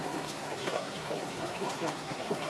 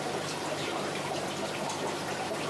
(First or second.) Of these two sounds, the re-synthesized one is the first